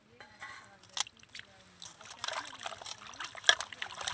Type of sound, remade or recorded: recorded